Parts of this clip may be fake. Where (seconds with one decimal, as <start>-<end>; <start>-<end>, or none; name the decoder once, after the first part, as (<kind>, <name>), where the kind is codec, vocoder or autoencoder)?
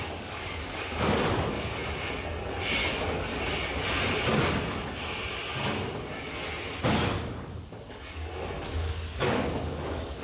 0.0-1.8 (codec, DAC); 2.9-3.3; 6.9-10.2